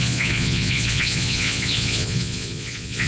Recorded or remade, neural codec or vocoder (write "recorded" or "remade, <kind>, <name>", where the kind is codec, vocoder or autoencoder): remade, vocoder, Vocos